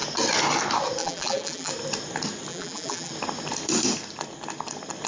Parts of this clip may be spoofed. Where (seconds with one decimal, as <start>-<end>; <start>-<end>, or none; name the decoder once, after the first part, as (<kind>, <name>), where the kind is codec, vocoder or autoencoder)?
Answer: 1.0-1.7 (vocoder, BigVGAN v2); 2.5-3.1